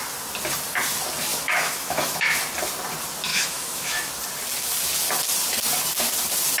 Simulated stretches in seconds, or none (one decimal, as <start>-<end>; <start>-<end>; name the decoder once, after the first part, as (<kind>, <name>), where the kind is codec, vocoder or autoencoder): 1.3-2.4 (autoencoder, DAC-VAE); 3.3-4.1